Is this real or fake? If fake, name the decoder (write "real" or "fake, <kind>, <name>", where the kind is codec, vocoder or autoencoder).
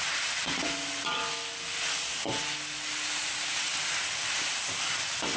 real